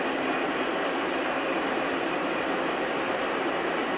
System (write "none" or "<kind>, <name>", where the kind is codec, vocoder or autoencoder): vocoder, BigVGAN v2